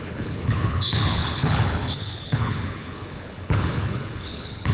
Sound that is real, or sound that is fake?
fake